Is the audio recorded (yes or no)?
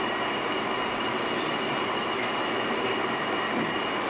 yes